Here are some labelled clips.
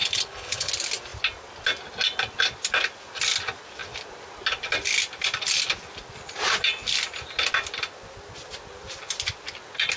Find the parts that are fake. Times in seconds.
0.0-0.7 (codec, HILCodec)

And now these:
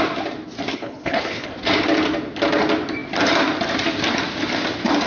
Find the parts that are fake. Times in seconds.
0.7-1.5 (codec, HILCodec)

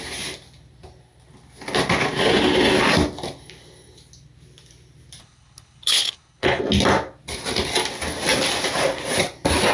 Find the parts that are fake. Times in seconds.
5.2-6.6 (codec, HILCodec)

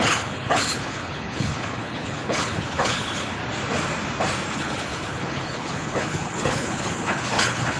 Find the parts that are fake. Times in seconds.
0.0-3.4 (codec, HILCodec); 4.5-7.8